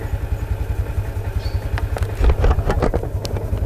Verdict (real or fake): real